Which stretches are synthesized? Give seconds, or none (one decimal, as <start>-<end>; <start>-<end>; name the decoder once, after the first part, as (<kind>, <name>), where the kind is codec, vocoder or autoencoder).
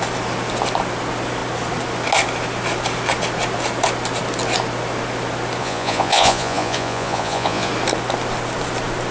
5.6-7.7 (vocoder, Vocos)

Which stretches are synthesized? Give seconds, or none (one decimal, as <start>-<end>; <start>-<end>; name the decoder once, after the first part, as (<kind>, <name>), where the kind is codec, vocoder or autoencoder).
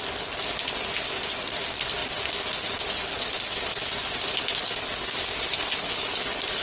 none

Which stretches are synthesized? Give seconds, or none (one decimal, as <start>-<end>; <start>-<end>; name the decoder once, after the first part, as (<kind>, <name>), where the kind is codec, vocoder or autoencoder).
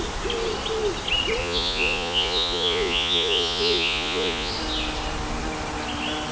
1.4-4.5 (vocoder, Vocos)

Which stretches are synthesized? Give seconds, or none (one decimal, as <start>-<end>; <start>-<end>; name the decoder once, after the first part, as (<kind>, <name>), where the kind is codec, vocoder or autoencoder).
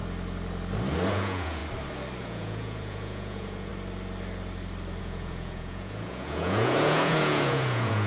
1.1-1.6 (vocoder, Vocos); 2.2-3.7; 5.0-8.1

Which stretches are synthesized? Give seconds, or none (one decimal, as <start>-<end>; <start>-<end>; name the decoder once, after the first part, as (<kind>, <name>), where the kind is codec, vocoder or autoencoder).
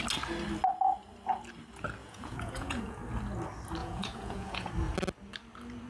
2.0-3.0 (vocoder, Vocos); 3.8-4.7